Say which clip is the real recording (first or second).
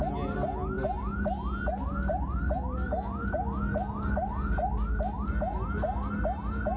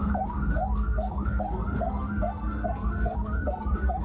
first